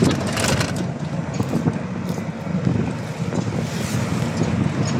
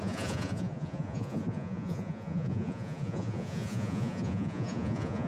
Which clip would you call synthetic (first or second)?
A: second